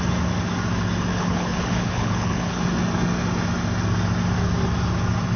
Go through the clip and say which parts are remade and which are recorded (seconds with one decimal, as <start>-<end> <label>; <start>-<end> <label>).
0.0-1.1 recorded; 1.1-2.6 remade; 2.6-5.4 recorded